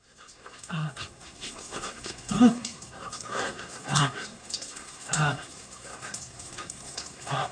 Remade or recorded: remade